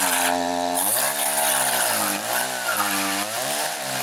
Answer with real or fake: fake